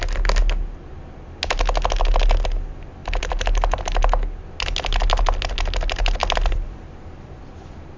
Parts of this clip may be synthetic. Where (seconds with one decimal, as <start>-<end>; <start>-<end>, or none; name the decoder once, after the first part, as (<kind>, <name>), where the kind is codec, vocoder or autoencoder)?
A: 3.0-3.8 (vocoder, BigVGAN v2); 6.2-6.8